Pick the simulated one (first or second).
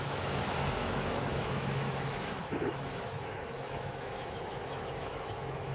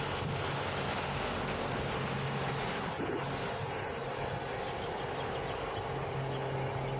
first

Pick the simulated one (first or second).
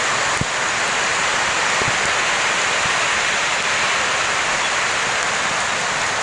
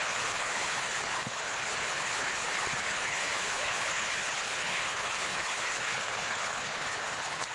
second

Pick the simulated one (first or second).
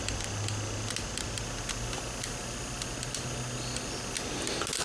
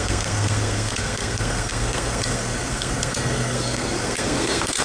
second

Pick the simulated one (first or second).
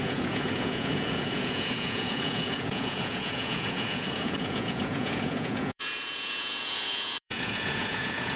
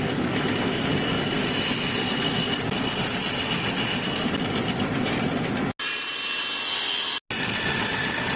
first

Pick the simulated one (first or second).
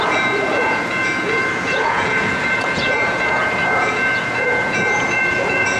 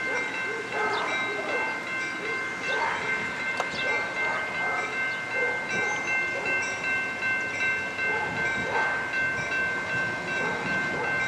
first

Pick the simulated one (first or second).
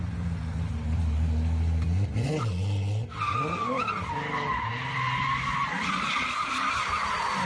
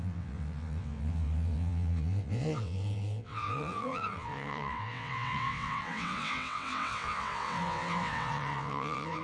second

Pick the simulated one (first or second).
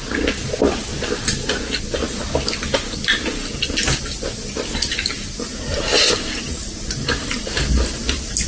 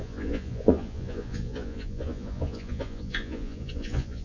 second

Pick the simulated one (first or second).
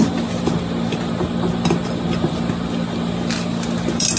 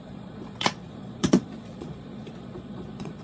second